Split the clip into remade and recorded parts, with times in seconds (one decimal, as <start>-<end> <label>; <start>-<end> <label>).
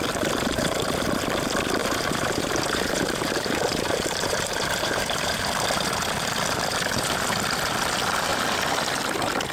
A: 0.0-1.8 recorded; 1.8-5.3 remade; 5.3-9.5 recorded